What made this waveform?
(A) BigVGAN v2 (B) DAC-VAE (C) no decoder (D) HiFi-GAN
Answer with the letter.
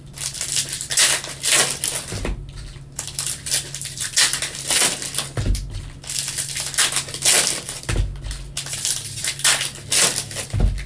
C